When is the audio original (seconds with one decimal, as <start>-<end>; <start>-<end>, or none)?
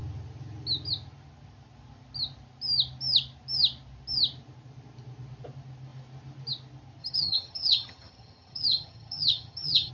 0.0-7.0